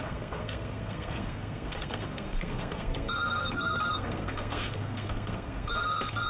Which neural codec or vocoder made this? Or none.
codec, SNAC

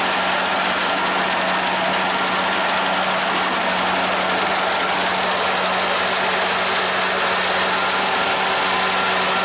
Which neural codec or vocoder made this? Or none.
none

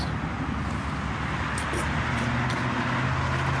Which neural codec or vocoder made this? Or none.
none